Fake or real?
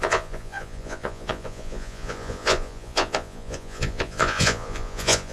fake